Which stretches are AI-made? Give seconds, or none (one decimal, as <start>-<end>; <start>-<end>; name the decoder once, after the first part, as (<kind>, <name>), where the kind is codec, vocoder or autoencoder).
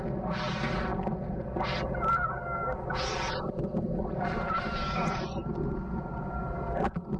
none